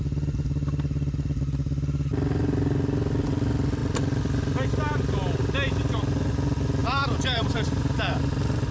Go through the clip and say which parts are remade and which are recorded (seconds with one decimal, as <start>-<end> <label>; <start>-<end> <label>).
0.0-6.8 recorded; 6.8-8.2 remade; 8.2-8.7 recorded